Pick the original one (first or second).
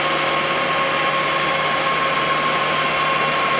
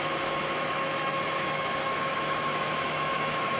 first